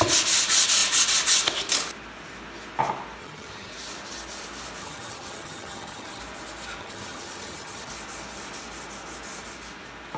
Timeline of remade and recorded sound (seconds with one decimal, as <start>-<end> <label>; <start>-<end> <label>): 0.0-3.2 recorded; 3.2-3.7 remade; 3.7-4.8 recorded; 4.8-6.2 remade; 6.2-6.8 recorded; 6.8-7.9 remade; 7.9-10.2 recorded